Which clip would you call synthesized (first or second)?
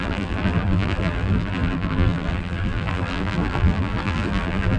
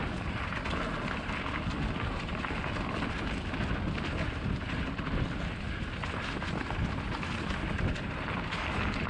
first